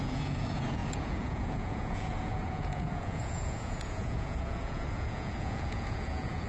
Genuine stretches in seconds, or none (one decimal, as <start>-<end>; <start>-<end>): none